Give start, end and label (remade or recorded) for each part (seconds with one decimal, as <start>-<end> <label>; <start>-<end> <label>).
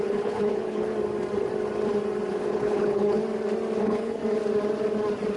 0.0-0.9 remade; 0.9-2.3 recorded; 2.3-3.2 remade; 3.2-3.8 recorded; 3.8-4.2 remade; 4.2-5.4 recorded